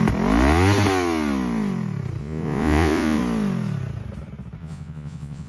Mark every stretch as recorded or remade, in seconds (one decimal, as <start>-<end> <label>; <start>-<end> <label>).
0.0-2.2 recorded; 2.2-3.2 remade; 3.2-4.6 recorded; 4.6-5.5 remade